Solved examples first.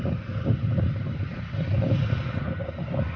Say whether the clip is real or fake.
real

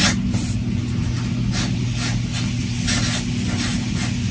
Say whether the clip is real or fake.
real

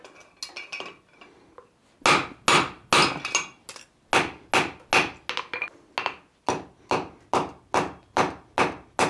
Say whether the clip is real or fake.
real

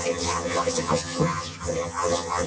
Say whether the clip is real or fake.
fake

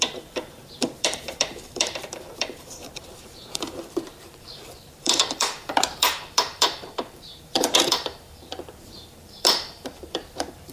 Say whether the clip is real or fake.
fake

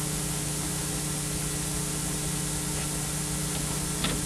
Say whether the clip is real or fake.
real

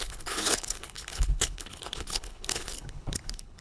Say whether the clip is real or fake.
fake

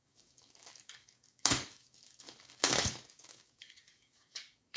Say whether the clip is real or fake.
fake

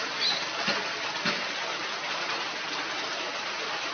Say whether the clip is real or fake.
real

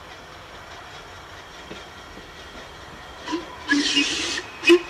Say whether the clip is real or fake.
real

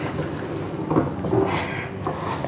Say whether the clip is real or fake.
real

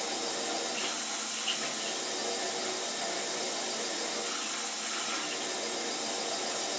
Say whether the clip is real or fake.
real